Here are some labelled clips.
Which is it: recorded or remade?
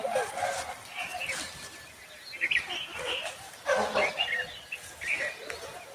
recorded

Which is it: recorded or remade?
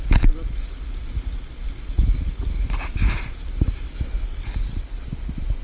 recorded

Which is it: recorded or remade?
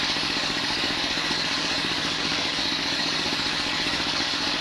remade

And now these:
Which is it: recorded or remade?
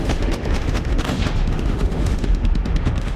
remade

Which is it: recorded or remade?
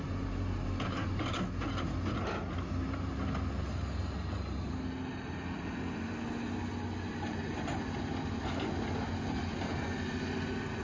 recorded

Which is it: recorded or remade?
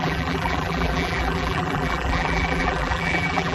remade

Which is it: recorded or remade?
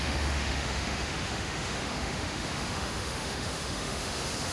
remade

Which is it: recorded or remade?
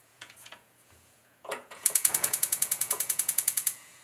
remade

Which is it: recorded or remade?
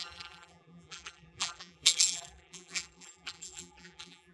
remade